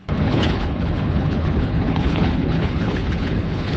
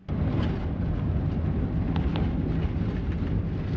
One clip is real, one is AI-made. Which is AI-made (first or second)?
first